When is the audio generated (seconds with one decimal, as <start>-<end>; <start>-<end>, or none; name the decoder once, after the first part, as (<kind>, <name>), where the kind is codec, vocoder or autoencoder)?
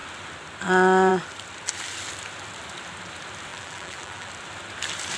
3.5-4.3 (vocoder, BigVGAN v2)